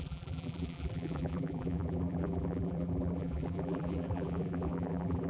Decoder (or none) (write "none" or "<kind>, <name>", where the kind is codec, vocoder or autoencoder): vocoder, BigVGAN v2